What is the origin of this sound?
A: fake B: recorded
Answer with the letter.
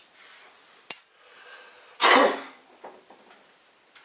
B